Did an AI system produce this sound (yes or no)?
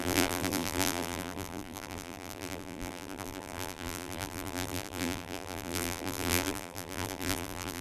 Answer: yes